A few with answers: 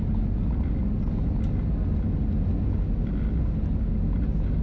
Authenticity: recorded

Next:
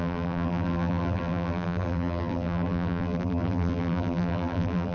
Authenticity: remade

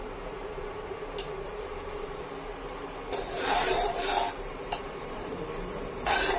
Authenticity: remade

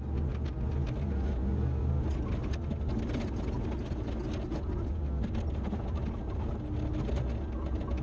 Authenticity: recorded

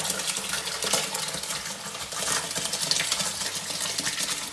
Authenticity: recorded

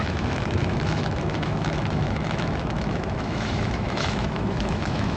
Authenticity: remade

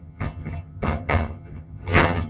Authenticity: remade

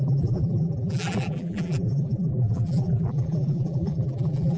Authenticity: remade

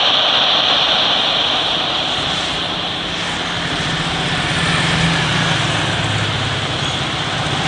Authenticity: recorded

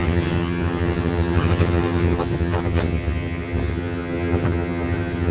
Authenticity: remade